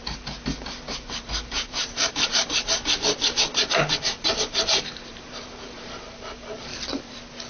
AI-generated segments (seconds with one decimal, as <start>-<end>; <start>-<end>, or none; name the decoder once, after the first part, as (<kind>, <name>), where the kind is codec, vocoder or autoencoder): 0.0-6.7 (vocoder, BigVGAN v2)